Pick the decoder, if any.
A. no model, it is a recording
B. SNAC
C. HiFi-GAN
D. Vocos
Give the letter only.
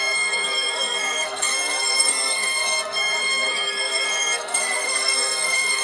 B